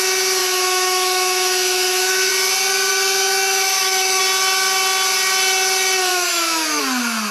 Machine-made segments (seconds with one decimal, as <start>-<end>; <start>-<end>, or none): 0.4-2.3; 2.9-4.2; 6.1-6.8